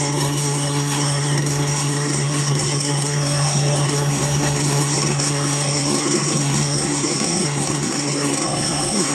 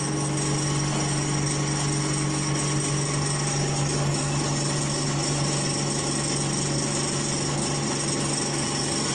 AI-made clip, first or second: first